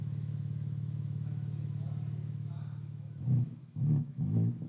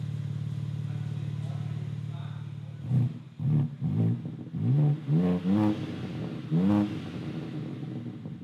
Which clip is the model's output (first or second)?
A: first